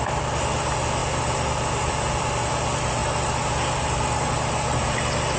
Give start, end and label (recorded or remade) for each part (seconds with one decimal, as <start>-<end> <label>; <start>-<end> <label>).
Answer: 0.0-1.0 recorded; 1.0-2.4 remade; 2.4-5.4 recorded